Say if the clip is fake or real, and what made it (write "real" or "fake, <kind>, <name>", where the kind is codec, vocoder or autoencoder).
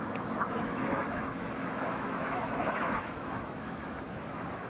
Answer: fake, autoencoder, DAC-VAE